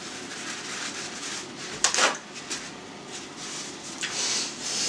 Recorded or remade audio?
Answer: recorded